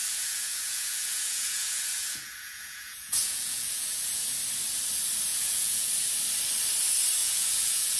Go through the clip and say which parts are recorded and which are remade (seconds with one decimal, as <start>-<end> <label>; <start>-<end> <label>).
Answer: 0.0-4.4 remade; 4.4-5.3 recorded; 5.3-5.9 remade; 5.9-7.2 recorded; 7.2-8.0 remade